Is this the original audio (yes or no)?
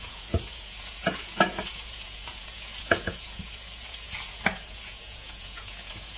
no